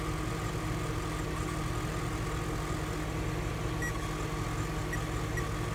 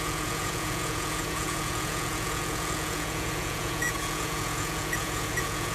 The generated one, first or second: second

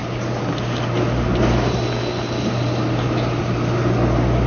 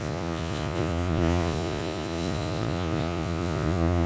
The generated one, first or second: second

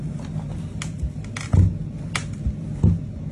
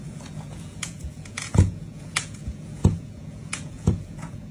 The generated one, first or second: second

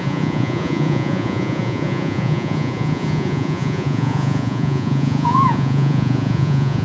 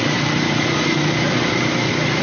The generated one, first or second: first